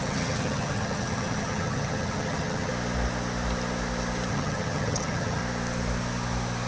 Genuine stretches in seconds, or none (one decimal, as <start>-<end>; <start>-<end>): 2.7-4.3; 5.4-6.7